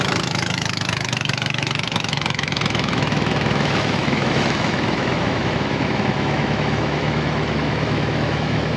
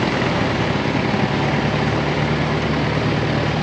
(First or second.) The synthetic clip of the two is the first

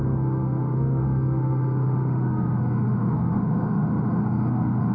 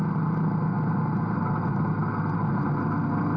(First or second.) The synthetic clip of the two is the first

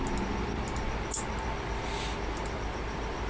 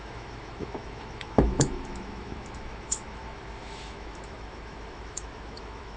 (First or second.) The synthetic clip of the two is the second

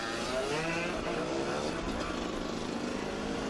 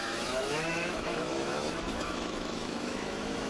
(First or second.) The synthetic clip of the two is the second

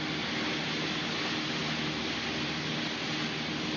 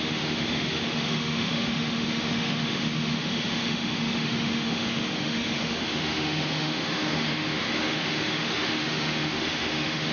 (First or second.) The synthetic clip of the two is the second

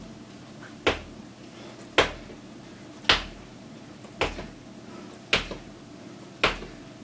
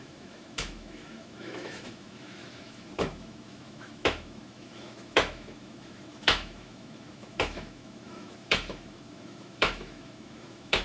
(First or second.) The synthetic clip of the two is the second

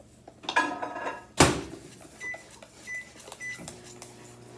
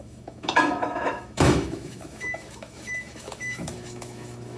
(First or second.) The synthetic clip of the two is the second